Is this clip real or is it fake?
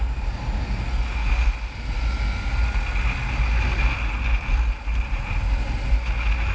real